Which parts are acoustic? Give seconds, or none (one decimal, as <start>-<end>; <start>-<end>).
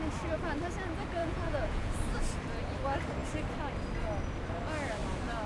0.0-1.2; 1.9-5.5